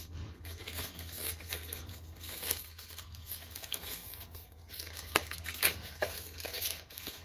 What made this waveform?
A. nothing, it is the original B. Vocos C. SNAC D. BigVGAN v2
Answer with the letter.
C